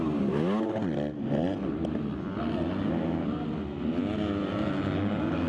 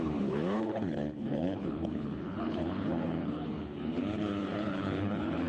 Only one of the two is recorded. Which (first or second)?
first